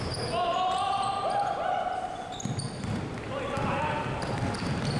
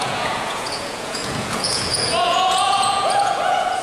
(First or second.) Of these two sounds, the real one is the first